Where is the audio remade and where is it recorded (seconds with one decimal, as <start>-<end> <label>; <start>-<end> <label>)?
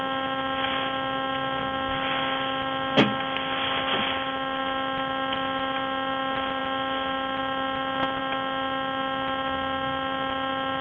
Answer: 0.0-10.8 recorded